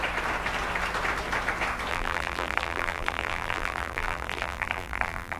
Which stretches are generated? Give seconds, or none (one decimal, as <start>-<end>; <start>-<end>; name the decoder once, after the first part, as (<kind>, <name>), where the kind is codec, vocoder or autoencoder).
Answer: 1.9-5.4 (vocoder, BigVGAN v2)